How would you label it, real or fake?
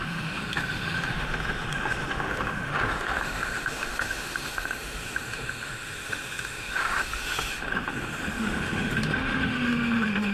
fake